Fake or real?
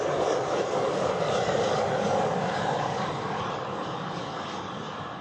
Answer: fake